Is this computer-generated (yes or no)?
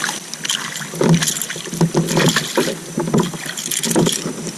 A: no